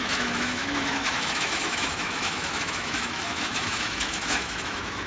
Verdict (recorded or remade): remade